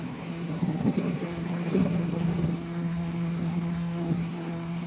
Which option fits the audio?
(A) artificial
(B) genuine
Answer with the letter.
A